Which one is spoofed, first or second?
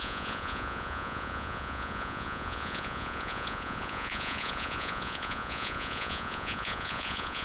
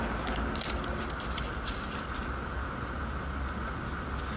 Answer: first